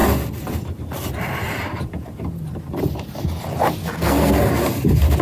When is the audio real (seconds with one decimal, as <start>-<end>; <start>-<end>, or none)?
0.0-3.8; 4.5-5.2